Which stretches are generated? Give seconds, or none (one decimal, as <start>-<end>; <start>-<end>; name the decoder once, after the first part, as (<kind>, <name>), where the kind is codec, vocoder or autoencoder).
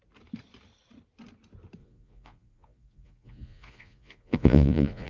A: 1.8-5.1 (vocoder, Vocos)